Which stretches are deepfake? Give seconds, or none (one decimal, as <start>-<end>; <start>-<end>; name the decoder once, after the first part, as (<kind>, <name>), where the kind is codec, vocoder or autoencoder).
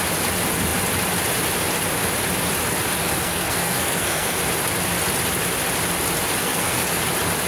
3.0-4.4 (codec, SNAC); 6.4-7.0